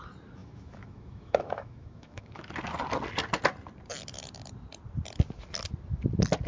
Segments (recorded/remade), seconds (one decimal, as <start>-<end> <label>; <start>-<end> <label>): 0.0-0.4 recorded; 0.4-2.5 remade; 2.5-6.5 recorded